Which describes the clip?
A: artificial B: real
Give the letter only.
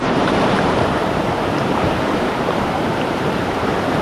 A